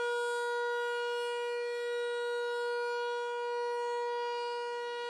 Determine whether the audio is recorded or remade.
recorded